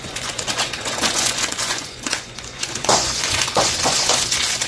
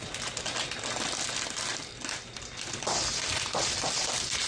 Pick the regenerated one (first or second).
first